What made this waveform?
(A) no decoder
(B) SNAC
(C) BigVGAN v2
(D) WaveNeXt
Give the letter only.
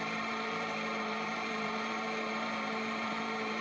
C